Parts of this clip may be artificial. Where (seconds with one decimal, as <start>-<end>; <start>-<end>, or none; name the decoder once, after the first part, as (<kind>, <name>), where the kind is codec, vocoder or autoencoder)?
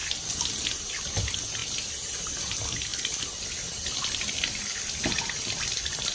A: none